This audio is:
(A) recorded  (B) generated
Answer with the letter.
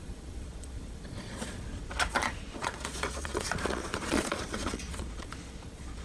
B